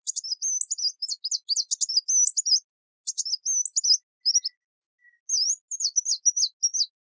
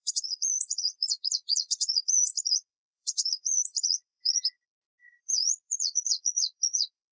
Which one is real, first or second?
first